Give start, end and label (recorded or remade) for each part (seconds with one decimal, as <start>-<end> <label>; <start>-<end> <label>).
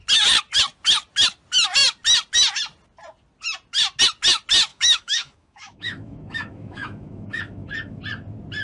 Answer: 0.0-4.7 recorded; 4.7-8.0 remade; 8.0-8.6 recorded